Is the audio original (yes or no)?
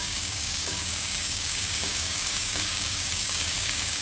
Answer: no